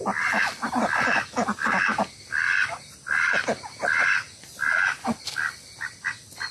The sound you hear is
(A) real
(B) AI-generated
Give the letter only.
A